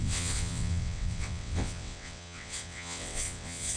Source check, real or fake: fake